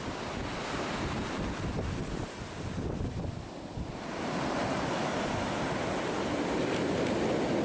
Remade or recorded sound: recorded